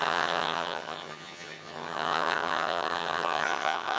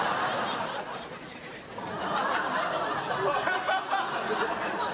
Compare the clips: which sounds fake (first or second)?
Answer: first